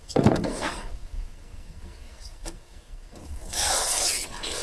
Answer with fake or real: fake